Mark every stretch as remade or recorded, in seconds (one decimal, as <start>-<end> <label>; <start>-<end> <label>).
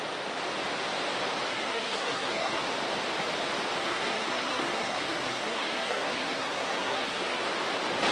0.0-1.5 recorded; 1.5-2.6 remade; 2.6-3.8 recorded; 3.8-7.4 remade; 7.4-8.1 recorded